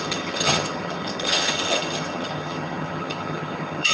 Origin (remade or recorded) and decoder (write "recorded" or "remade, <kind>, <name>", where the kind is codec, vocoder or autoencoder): remade, vocoder, HiFi-GAN